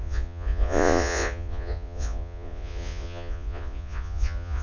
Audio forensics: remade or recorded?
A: remade